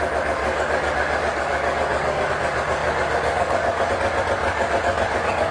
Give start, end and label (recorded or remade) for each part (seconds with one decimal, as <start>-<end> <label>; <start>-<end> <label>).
0.0-0.4 recorded; 0.4-2.3 remade; 2.3-2.8 recorded; 2.8-3.9 remade; 3.9-4.4 recorded; 4.4-5.5 remade